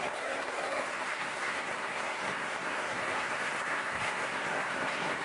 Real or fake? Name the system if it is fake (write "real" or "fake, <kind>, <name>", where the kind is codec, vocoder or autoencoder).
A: fake, codec, SNAC